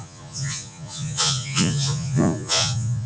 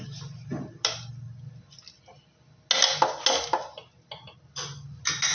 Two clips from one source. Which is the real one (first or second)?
second